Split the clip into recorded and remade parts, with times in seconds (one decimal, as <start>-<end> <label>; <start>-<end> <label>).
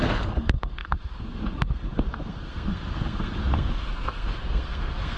0.0-5.2 remade